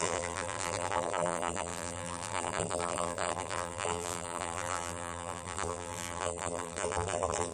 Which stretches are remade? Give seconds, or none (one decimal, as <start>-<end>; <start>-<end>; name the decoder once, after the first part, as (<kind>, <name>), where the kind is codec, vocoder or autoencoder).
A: 0.0-7.5 (vocoder, BigVGAN v2)